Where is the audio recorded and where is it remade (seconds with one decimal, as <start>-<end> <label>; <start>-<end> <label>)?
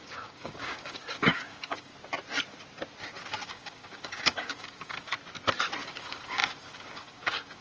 0.0-1.9 remade; 1.9-3.4 recorded; 3.4-5.1 remade; 5.1-5.9 recorded; 5.9-7.6 remade